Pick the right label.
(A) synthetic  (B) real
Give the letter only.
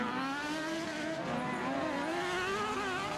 B